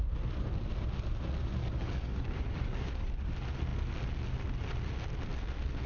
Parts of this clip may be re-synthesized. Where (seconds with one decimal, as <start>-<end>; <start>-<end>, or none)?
1.6-3.3